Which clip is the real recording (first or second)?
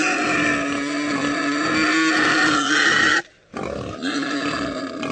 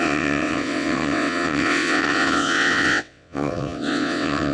first